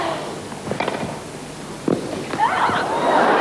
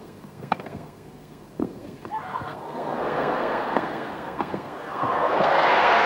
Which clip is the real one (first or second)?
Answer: first